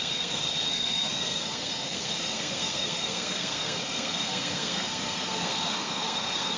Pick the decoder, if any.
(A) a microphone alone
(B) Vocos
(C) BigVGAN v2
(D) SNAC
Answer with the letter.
D